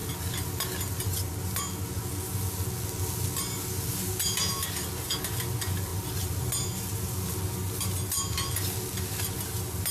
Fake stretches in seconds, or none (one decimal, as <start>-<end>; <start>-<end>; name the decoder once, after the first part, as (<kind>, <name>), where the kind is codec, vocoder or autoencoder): none